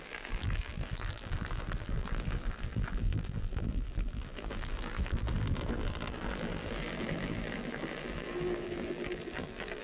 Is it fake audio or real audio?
fake